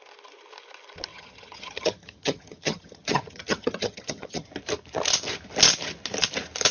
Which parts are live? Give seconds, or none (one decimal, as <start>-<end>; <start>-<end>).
0.0-1.1; 4.5-6.7